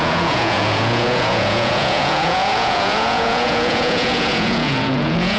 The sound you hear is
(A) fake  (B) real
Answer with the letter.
A